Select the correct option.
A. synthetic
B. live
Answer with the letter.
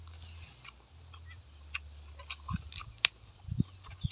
B